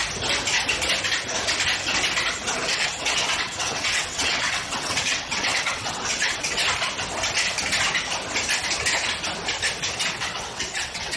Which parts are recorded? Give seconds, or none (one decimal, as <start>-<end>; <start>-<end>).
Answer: 0.0-2.7; 6.6-10.1

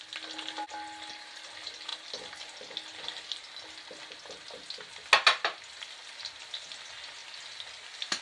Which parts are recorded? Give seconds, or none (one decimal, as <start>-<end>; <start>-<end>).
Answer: 0.0-8.2

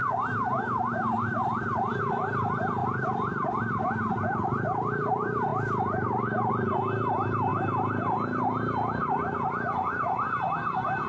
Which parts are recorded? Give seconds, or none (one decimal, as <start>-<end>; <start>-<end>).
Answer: 0.0-1.2; 5.5-6.5; 7.5-9.9

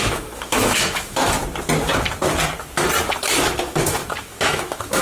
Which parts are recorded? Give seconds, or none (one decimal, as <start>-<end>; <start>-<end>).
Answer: 1.4-3.2

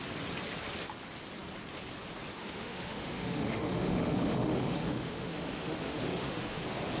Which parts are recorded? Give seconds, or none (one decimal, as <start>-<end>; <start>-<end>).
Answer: 0.0-2.4; 6.6-7.0